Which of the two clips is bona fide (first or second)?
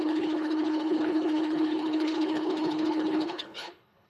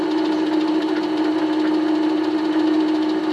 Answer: second